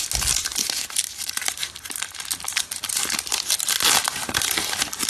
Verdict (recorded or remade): recorded